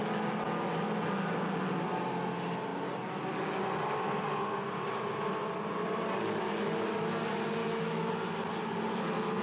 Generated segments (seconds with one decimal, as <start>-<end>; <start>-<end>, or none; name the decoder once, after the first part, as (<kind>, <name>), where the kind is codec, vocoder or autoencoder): 7.6-8.1 (autoencoder, DAC-VAE)